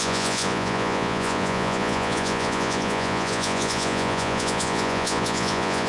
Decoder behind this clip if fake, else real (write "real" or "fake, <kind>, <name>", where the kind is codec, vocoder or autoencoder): fake, vocoder, Vocos